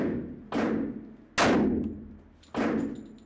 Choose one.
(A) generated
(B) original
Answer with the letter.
B